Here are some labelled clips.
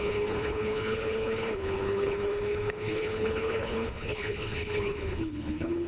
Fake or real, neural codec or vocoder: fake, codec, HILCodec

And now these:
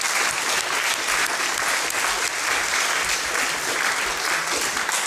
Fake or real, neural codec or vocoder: real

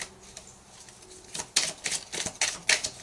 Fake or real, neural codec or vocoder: real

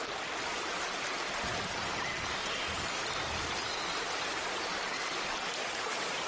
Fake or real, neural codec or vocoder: real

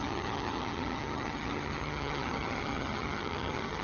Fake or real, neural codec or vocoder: fake, vocoder, HiFi-GAN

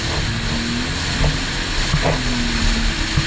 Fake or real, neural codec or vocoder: real